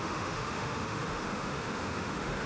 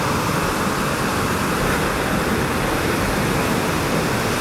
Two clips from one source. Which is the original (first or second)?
second